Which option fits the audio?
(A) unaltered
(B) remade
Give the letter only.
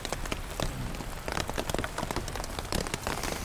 B